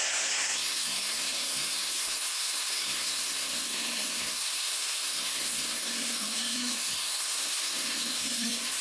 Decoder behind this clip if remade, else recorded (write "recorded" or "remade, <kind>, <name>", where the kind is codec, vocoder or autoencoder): remade, codec, SNAC